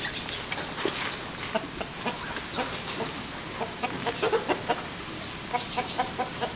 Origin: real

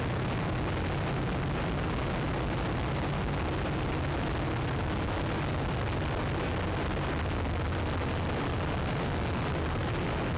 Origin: real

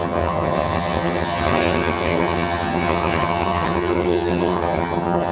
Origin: fake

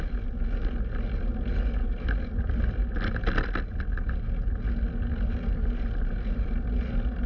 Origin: real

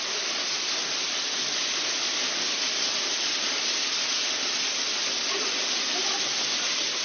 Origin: real